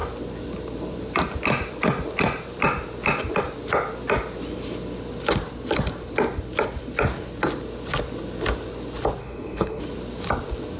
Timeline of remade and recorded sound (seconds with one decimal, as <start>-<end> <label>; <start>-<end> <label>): 0.0-9.2 recorded; 9.2-9.8 remade; 9.8-10.8 recorded